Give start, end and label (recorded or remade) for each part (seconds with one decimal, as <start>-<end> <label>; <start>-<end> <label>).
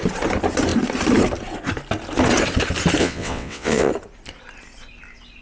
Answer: 0.0-3.0 recorded; 3.0-3.9 remade; 3.9-5.4 recorded